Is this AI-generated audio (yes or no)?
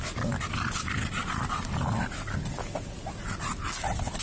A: no